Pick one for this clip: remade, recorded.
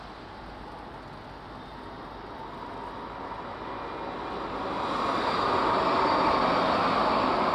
recorded